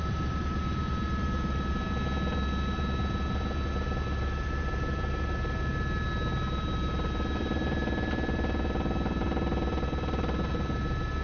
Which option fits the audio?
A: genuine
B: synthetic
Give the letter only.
A